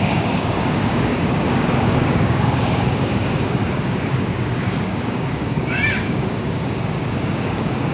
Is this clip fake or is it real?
fake